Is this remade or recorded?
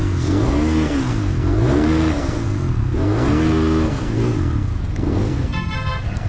remade